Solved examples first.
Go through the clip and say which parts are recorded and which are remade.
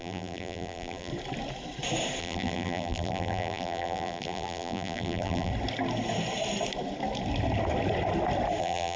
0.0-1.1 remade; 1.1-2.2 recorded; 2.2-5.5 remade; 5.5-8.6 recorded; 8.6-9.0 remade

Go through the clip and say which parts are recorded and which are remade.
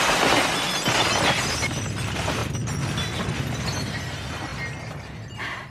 0.0-5.7 recorded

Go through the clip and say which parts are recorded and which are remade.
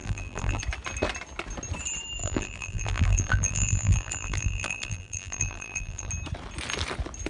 0.0-0.6 remade; 0.6-2.2 recorded; 2.2-6.1 remade; 6.1-7.3 recorded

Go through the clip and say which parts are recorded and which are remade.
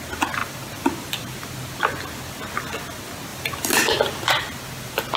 0.0-0.4 recorded; 0.4-1.4 remade; 1.4-3.3 recorded; 3.3-4.3 remade; 4.3-5.2 recorded